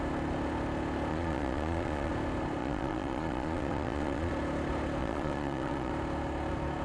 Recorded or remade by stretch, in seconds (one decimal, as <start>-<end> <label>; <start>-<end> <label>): 0.0-1.1 recorded; 1.1-2.1 remade; 2.1-2.6 recorded; 2.6-4.3 remade; 4.3-5.0 recorded; 5.0-5.9 remade; 5.9-6.8 recorded